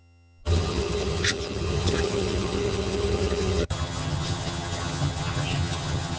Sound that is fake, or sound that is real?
fake